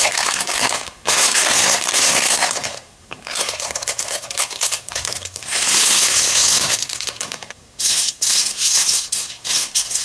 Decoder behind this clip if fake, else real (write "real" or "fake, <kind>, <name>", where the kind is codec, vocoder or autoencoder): fake, codec, SNAC